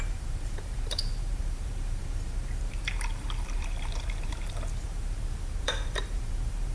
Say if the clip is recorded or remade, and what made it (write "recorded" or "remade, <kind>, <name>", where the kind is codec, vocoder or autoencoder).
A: remade, vocoder, BigVGAN v2